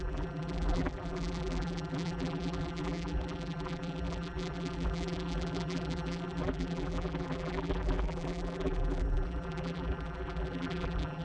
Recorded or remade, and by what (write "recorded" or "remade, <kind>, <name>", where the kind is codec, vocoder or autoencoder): remade, vocoder, BigVGAN v2